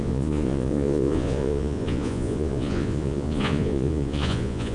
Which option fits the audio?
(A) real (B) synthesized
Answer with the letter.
B